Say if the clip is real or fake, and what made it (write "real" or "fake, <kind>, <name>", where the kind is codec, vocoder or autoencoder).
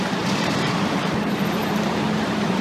fake, vocoder, BigVGAN v2